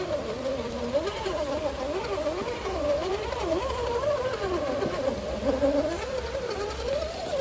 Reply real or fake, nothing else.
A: fake